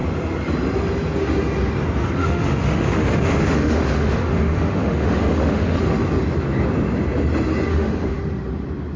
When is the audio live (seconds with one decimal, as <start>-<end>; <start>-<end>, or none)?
0.0-2.2; 5.8-7.7; 8.2-9.0